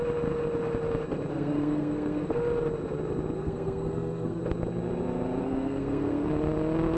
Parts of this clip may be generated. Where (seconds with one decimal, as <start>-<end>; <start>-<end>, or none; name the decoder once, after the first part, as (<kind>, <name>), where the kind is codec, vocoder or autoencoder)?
1.3-2.4 (codec, SNAC); 3.4-4.4; 5.4-6.3